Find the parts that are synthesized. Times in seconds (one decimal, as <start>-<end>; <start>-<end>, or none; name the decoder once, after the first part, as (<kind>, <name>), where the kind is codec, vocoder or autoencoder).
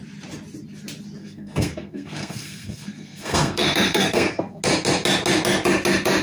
1.2-4.6 (codec, SNAC)